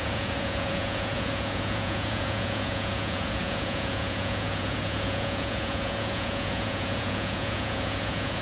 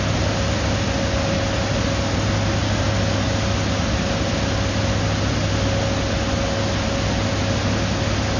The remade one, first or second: first